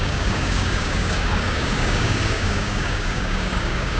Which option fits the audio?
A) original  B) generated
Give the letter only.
B